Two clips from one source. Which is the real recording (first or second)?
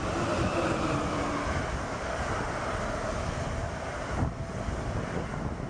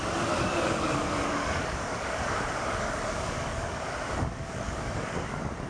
first